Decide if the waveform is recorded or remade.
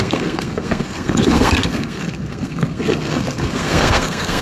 remade